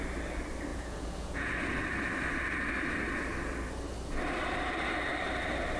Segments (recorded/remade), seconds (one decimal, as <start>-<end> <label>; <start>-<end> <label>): 0.0-0.7 recorded; 0.7-1.5 remade; 1.5-5.8 recorded